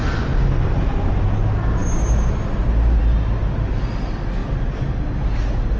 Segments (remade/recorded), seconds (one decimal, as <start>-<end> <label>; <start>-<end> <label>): 0.0-5.8 recorded